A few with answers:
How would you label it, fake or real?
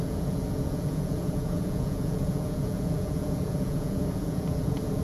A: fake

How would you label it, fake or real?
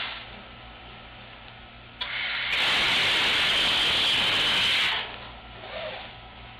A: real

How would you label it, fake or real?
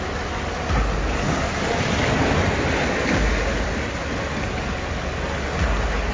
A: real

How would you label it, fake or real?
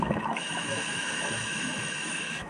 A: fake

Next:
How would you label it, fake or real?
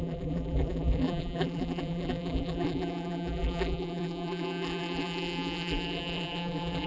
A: fake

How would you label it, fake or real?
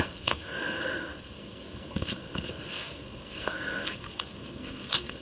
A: fake